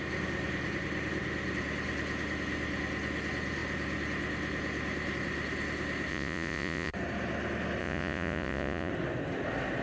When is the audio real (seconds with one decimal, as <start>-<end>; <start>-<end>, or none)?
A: 0.0-6.1; 6.9-7.8; 8.9-9.8